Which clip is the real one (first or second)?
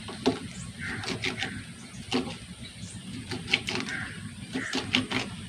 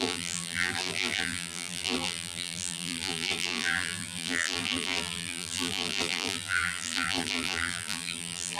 first